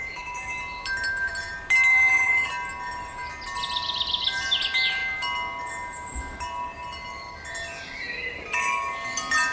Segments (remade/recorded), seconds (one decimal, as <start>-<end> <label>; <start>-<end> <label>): 0.0-1.9 recorded; 1.9-2.5 remade; 2.5-9.5 recorded